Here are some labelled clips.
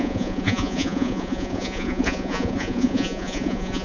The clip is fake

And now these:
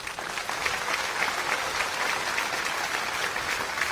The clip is real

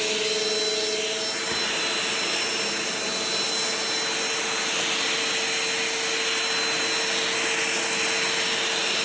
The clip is real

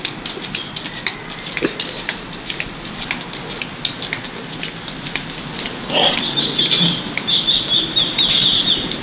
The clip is real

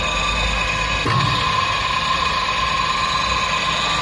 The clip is real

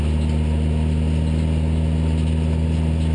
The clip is real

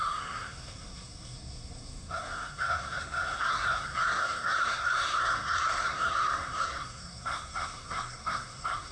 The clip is fake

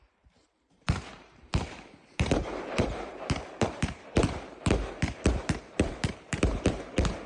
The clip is fake